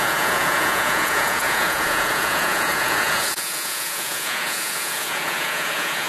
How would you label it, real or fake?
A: fake